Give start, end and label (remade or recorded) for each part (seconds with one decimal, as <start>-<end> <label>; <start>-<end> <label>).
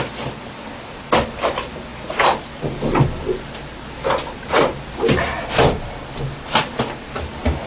0.0-7.7 recorded